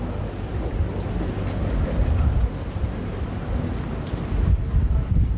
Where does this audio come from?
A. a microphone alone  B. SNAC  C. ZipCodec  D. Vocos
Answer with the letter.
A